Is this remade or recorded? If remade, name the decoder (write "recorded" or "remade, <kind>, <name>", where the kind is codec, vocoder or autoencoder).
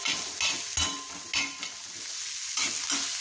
recorded